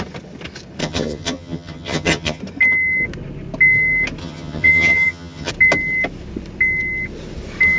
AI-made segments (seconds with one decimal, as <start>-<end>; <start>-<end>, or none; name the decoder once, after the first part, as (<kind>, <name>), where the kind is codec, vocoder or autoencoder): 0.8-2.4 (vocoder, HiFi-GAN); 4.2-5.5